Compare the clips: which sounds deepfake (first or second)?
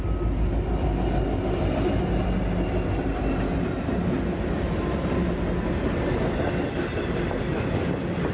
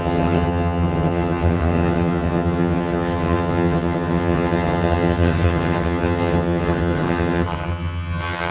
second